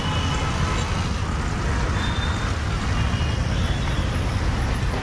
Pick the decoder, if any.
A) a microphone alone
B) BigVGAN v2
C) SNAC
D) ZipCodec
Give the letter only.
A